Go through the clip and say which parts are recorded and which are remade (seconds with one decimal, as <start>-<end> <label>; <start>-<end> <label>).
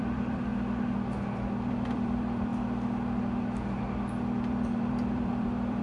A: 0.0-0.5 remade; 0.5-1.7 recorded; 1.7-2.5 remade; 2.5-4.4 recorded; 4.4-5.8 remade